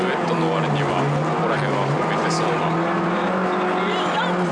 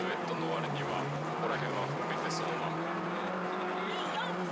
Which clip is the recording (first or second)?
first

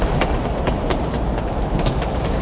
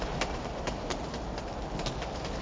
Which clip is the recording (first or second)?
second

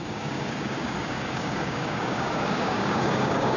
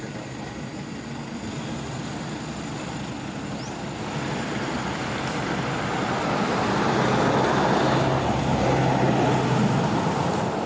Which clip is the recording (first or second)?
second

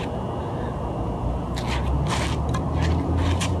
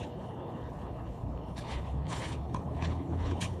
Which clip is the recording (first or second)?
first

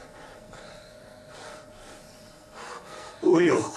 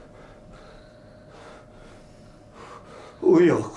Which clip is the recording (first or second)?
second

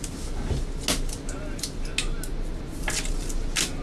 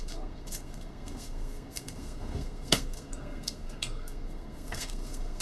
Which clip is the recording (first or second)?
first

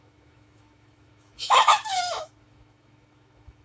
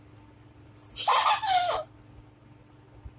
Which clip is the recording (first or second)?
second